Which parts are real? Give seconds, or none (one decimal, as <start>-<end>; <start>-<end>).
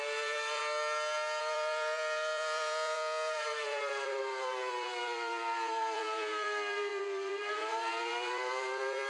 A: 0.6-1.4